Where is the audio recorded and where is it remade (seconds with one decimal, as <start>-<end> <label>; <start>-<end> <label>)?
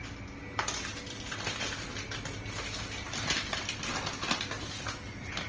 0.0-5.5 recorded